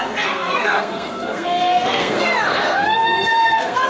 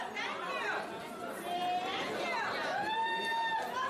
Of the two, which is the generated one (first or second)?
first